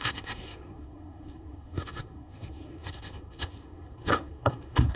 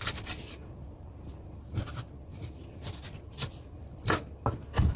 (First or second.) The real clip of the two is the second